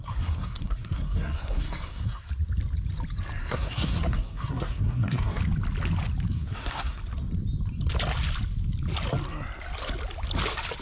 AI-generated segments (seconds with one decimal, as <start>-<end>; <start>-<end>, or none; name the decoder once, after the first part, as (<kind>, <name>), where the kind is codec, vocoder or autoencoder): 0.0-2.3 (codec, SNAC); 3.4-5.4; 6.3-7.0